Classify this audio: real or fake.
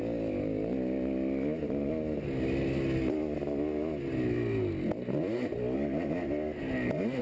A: real